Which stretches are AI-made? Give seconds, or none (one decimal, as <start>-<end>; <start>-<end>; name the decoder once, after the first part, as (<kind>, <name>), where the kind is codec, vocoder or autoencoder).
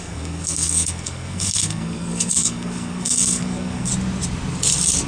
0.0-3.9 (codec, SNAC)